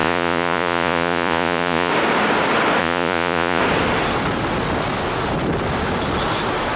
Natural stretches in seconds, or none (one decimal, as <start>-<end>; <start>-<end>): 1.9-2.8; 3.6-6.8